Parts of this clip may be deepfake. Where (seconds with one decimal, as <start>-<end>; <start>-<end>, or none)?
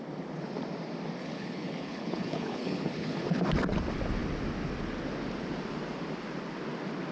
1.2-3.4